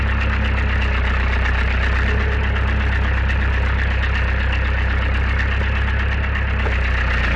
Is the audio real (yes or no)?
yes